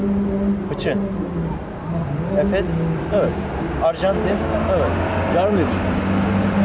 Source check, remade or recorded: recorded